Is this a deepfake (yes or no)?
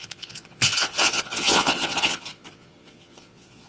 yes